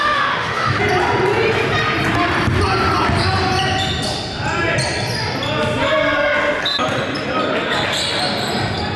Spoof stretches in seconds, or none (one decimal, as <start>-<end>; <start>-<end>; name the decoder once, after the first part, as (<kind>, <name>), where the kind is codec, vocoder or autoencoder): 0.0-0.8 (autoencoder, DAC-VAE)